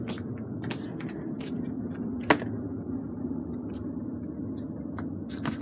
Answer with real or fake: real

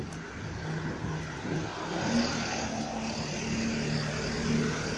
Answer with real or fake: real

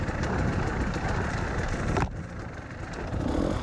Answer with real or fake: real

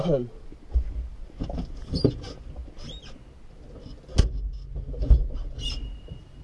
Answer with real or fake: real